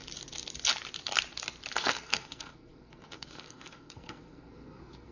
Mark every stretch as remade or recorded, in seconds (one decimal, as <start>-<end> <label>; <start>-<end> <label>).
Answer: 0.0-1.8 recorded; 1.8-5.1 remade

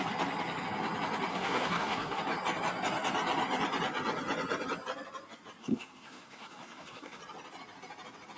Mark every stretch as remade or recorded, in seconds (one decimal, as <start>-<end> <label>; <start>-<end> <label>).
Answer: 0.0-1.3 recorded; 1.3-2.2 remade; 2.2-5.6 recorded; 5.6-7.2 remade; 7.2-8.4 recorded

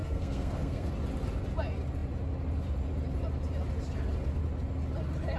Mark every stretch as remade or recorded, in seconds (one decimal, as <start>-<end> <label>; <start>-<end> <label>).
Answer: 0.0-0.9 remade; 0.9-5.4 recorded

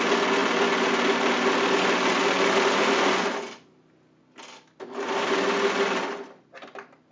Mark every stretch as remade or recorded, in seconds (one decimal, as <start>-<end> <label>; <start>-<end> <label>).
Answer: 0.0-7.1 recorded

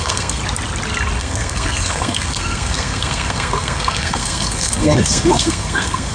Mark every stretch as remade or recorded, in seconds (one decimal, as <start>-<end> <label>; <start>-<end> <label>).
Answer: 0.0-0.4 remade; 0.4-1.2 recorded; 1.2-6.1 remade